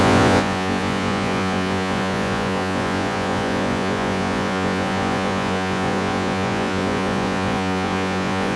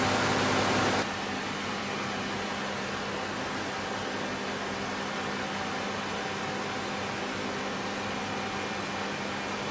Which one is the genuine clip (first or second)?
second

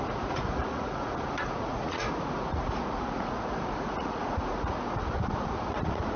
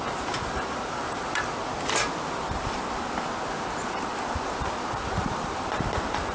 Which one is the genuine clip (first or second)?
second